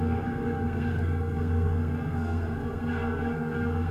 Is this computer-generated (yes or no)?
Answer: yes